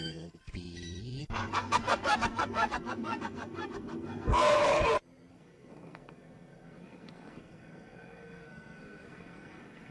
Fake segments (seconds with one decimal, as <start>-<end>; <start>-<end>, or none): 0.0-0.5; 1.2-4.6; 5.3-9.9